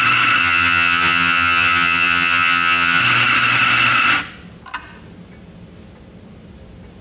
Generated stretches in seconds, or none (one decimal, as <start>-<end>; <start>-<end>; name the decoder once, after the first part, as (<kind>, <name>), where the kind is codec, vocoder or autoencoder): 0.4-3.0 (vocoder, HiFi-GAN)